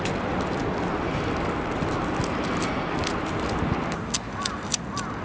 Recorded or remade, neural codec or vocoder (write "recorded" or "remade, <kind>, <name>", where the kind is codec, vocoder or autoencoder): recorded